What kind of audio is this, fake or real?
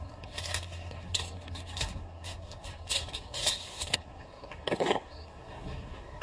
fake